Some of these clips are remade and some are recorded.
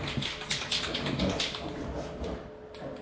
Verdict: recorded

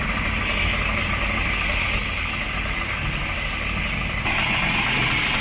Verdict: recorded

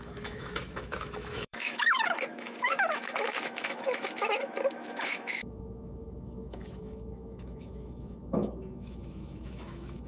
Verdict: remade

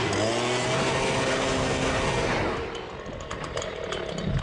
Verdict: recorded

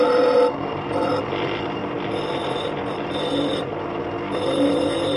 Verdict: recorded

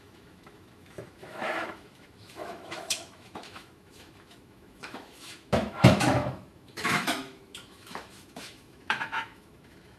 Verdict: remade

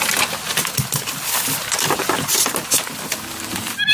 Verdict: recorded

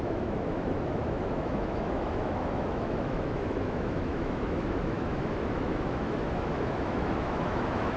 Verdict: remade